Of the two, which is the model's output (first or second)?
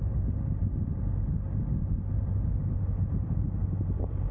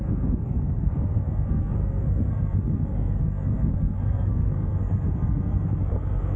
second